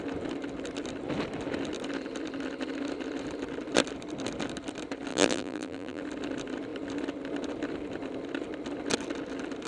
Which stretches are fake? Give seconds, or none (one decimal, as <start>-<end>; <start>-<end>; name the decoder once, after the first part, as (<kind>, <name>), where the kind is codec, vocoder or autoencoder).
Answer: 5.1-6.0 (vocoder, BigVGAN v2)